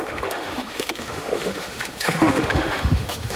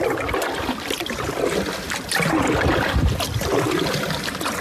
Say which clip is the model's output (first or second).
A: first